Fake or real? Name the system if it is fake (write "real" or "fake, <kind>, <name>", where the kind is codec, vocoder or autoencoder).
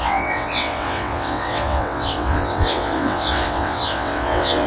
fake, vocoder, WaveNeXt